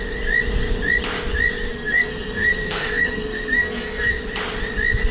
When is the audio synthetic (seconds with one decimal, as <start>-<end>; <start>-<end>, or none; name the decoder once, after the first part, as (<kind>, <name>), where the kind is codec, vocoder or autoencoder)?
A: 1.7-4.1 (codec, SNAC)